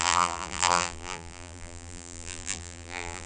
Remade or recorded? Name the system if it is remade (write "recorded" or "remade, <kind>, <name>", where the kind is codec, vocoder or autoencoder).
remade, vocoder, BigVGAN v2